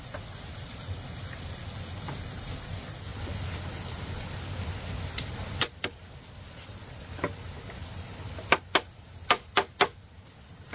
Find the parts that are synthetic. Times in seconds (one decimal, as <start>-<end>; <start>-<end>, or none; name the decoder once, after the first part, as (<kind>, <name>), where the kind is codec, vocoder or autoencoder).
none